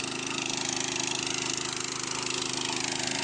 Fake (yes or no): no